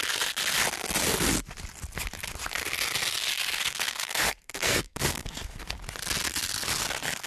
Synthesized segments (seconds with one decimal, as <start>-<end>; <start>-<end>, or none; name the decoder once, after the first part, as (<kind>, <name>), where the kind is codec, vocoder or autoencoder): 3.6-5.8 (codec, SNAC)